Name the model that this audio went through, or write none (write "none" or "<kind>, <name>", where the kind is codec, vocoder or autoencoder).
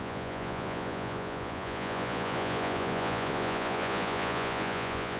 vocoder, Vocos